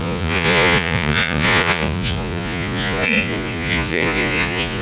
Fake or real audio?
fake